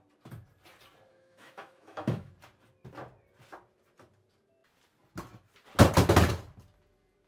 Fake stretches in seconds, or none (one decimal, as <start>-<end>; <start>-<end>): 1.1-2.3